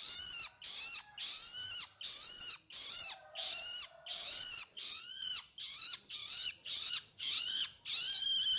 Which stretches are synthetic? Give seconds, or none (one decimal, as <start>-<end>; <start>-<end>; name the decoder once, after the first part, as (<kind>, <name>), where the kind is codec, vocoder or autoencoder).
4.1-5.3 (vocoder, Vocos); 6.2-7.8